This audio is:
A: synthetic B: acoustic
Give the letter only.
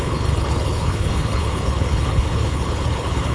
A